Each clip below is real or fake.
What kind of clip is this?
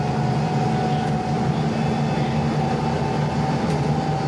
real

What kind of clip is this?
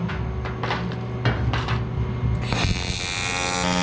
real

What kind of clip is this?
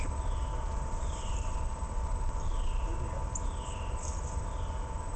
real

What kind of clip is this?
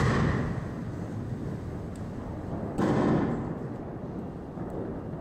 real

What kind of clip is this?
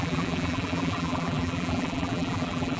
fake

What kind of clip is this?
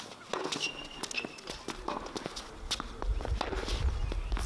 real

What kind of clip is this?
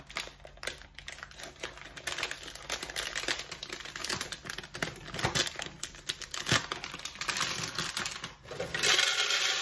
real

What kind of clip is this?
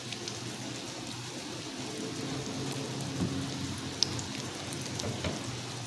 real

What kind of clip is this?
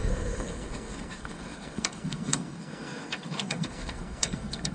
fake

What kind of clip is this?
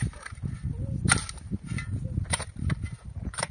fake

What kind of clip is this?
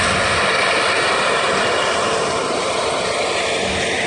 real